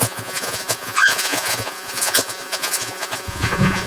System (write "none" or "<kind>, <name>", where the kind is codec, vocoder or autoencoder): vocoder, Vocos